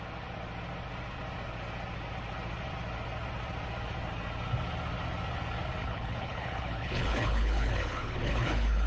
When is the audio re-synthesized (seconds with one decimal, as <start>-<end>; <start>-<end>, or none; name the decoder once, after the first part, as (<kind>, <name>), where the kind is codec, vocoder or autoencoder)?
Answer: 5.8-8.9 (codec, HILCodec)